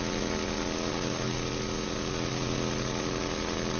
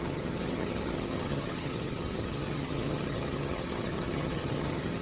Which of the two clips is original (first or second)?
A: first